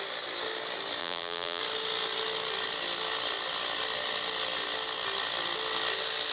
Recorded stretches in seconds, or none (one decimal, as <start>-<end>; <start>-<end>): 0.0-1.0; 1.6-6.3